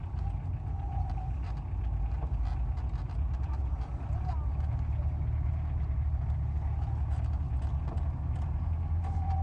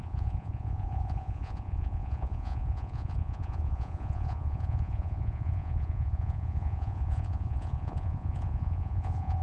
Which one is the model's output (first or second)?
second